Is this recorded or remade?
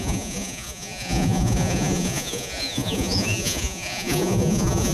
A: remade